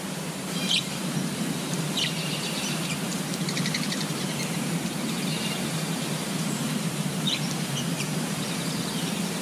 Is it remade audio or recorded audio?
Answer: remade